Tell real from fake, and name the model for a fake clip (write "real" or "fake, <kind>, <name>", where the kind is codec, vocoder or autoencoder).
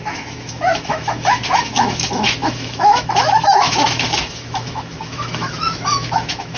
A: fake, autoencoder, DAC-VAE